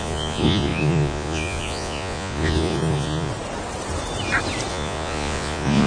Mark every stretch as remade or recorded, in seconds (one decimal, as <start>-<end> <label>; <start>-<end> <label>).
0.0-3.3 remade; 3.3-4.7 recorded; 4.7-5.9 remade